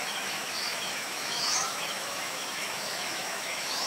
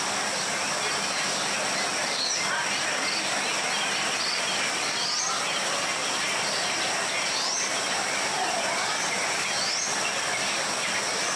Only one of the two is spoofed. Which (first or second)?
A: first